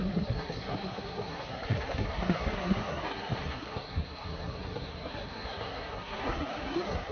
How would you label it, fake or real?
fake